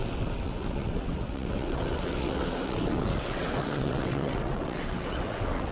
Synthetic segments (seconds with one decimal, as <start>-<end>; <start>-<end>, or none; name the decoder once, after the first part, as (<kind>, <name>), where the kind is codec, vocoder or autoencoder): 0.0-5.7 (vocoder, WaveNeXt)